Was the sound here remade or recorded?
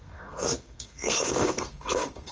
remade